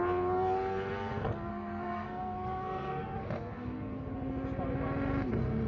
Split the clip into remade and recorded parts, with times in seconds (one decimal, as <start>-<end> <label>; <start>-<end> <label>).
0.0-1.5 recorded; 1.5-3.3 remade; 3.3-5.7 recorded